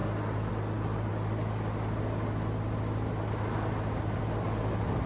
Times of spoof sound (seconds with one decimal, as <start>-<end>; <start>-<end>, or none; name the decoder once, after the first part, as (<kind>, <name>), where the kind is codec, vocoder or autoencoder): none